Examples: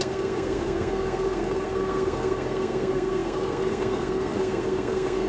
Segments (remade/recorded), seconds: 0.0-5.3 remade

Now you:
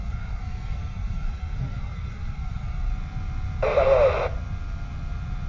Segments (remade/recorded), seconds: 0.0-2.9 remade; 2.9-5.5 recorded

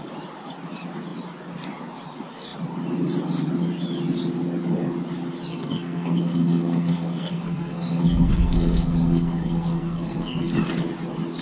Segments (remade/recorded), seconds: 0.0-5.5 recorded; 5.5-10.5 remade; 10.5-11.4 recorded

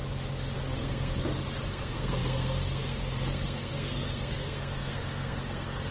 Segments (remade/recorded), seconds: 0.0-0.7 recorded; 0.7-1.1 remade; 1.1-1.7 recorded; 1.7-5.9 remade

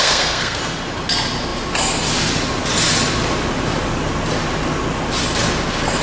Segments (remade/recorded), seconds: 0.0-0.6 remade; 0.6-6.0 recorded

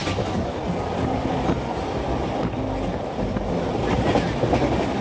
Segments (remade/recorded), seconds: 0.0-5.0 recorded